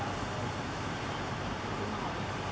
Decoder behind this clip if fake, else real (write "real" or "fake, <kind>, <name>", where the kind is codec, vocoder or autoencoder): real